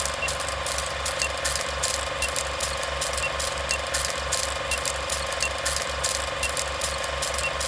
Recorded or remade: recorded